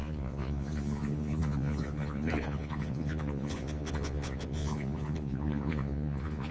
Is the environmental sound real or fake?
fake